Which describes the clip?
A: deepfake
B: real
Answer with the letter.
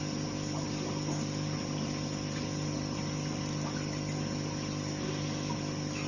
B